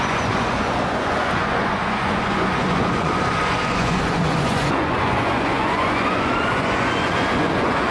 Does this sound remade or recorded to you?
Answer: remade